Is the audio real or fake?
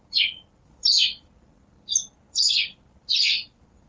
real